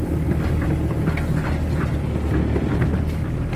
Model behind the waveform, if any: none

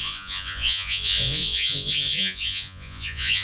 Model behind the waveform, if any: vocoder, Vocos